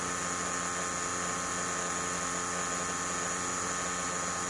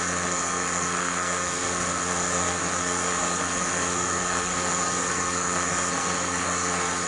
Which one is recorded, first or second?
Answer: first